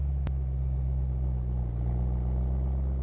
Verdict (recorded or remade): recorded